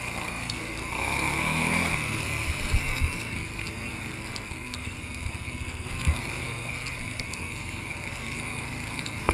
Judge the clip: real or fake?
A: fake